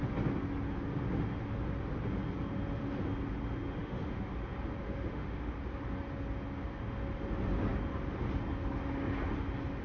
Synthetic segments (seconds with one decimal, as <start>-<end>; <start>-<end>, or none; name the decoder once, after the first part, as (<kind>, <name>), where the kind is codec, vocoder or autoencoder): 3.8-4.3 (autoencoder, DAC-VAE); 4.8-5.5